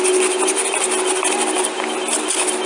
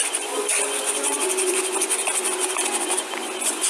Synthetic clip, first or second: second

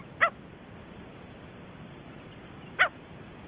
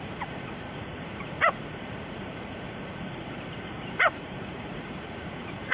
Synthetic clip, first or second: second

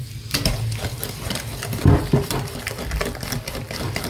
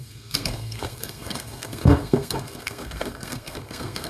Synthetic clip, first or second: second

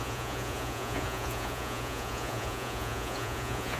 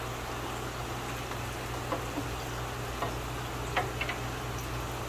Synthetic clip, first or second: first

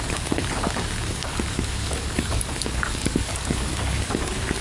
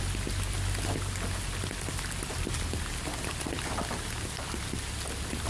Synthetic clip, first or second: first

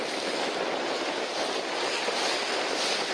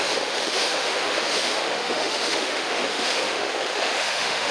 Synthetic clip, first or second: second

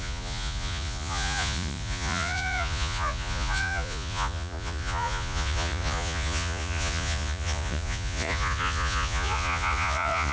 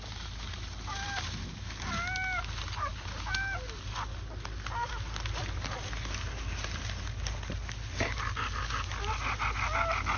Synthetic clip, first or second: first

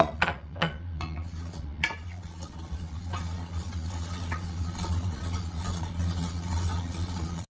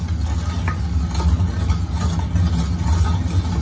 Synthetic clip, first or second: first